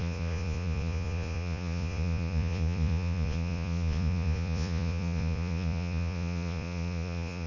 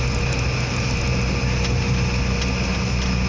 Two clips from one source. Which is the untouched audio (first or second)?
second